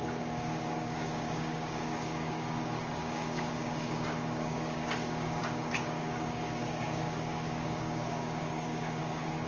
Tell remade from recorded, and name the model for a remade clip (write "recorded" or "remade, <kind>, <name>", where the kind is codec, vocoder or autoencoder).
remade, codec, DAC